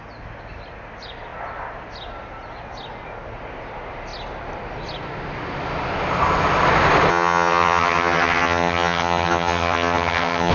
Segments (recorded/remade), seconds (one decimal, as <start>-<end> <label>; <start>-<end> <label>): 0.0-7.1 recorded; 7.1-10.5 remade